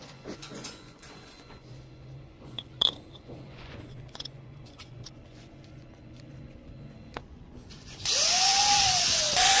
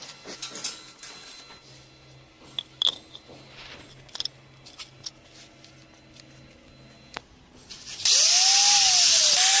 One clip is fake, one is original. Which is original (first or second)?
second